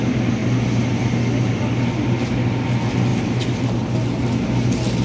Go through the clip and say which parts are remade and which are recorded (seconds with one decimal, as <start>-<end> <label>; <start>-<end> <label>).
0.0-5.0 recorded